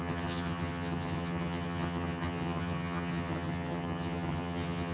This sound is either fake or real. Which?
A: fake